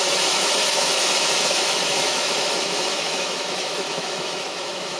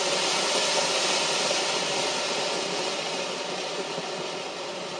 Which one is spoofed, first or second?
first